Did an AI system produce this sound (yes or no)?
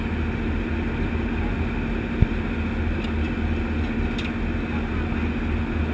no